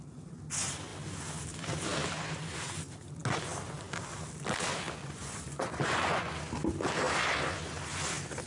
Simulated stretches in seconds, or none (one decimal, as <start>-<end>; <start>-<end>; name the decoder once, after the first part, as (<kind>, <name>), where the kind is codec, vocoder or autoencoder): 5.0-6.3 (vocoder, Vocos)